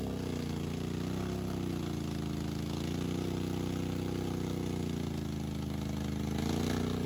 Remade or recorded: recorded